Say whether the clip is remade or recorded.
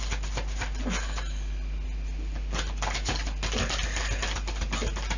recorded